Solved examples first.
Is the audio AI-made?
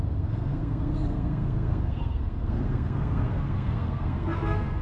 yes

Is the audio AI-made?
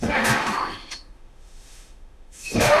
yes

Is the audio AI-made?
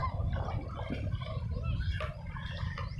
no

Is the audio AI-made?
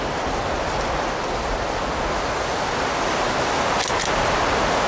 no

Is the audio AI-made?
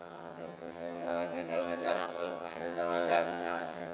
yes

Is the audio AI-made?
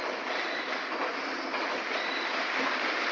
no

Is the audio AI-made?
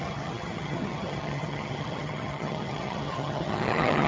yes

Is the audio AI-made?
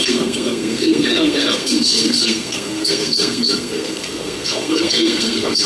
yes